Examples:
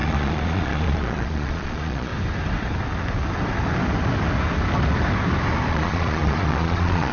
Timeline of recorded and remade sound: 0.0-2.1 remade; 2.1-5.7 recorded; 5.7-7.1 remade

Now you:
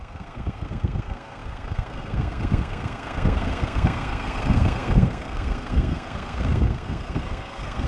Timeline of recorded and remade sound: 0.0-7.9 remade

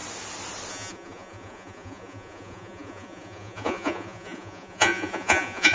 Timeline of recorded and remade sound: 0.0-0.7 recorded; 0.7-5.7 remade

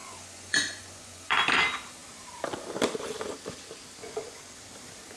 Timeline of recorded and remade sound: 0.0-1.4 remade; 1.4-4.0 recorded; 4.0-4.5 remade; 4.5-5.2 recorded

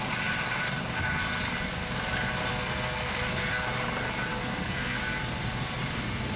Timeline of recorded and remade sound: 0.0-2.5 recorded; 2.5-3.5 remade; 3.5-4.3 recorded; 4.3-5.0 remade; 5.0-6.4 recorded

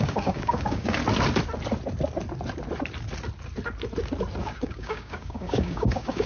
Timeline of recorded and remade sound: 0.0-1.0 remade; 1.0-4.4 recorded; 4.4-6.3 remade

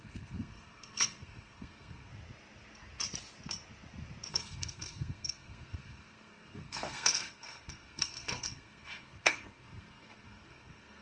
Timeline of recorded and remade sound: 0.0-2.1 remade; 2.1-4.3 recorded; 4.3-11.0 remade

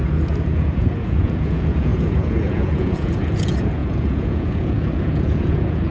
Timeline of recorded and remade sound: 0.0-5.9 remade